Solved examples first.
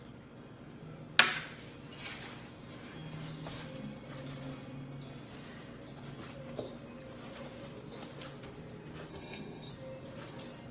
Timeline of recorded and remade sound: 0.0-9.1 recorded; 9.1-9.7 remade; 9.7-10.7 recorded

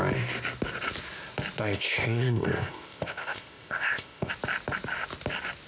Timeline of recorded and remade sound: 0.0-1.6 recorded; 1.6-4.3 remade; 4.3-5.7 recorded

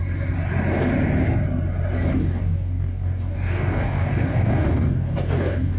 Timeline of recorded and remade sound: 0.0-2.1 recorded; 2.1-5.8 remade

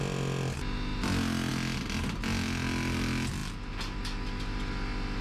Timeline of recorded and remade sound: 0.0-5.2 recorded

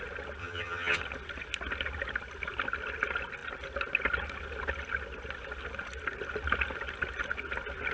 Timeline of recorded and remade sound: 0.0-0.4 recorded; 0.4-1.0 remade; 1.0-7.9 recorded